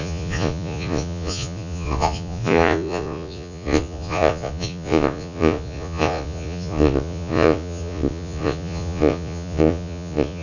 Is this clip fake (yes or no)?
yes